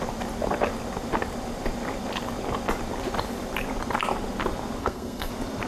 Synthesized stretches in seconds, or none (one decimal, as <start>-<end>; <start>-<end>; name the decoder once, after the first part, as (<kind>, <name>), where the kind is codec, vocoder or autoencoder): 4.8-5.3 (codec, SNAC)

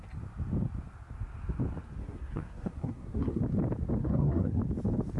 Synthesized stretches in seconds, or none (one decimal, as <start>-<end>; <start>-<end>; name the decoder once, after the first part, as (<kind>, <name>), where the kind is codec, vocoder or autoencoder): 2.0-3.4 (codec, SNAC); 4.0-4.6